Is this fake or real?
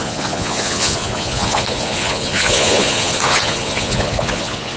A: fake